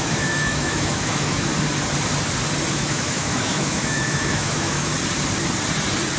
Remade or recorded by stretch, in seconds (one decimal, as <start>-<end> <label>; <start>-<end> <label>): 0.0-1.5 remade; 1.5-2.7 recorded; 2.7-4.9 remade; 4.9-6.2 recorded